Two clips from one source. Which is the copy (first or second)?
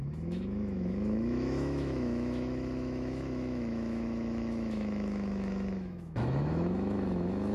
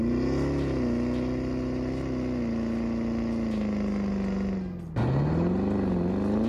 first